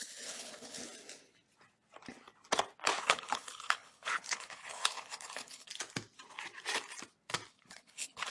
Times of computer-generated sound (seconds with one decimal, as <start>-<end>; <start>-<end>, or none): 0.0-0.8; 3.0-5.7; 7.5-8.3